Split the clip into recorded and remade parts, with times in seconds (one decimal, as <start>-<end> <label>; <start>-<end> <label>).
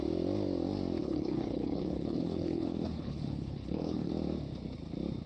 0.0-1.0 recorded; 1.0-4.1 remade; 4.1-5.3 recorded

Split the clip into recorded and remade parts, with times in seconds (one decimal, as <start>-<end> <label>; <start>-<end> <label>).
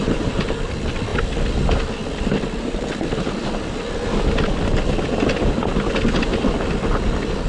0.0-7.5 recorded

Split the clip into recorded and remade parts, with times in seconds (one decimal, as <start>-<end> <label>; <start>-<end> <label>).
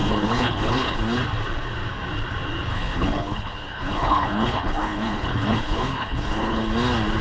0.0-1.0 remade; 1.0-2.7 recorded; 2.7-6.6 remade; 6.6-7.2 recorded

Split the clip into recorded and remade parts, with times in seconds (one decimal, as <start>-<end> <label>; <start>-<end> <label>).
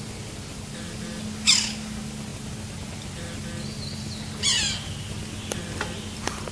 0.0-6.5 recorded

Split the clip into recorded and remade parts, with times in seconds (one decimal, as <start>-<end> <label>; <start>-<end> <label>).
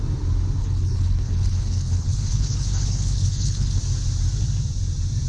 0.0-0.6 recorded; 0.6-3.8 remade; 3.8-5.3 recorded